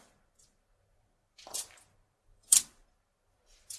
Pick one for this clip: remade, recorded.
remade